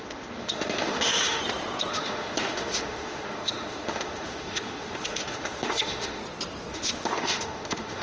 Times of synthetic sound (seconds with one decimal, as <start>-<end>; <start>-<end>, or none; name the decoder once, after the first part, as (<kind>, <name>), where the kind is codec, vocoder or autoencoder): 0.0-1.4 (autoencoder, DAC-VAE); 1.9-6.2; 6.7-8.0